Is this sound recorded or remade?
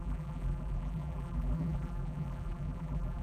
remade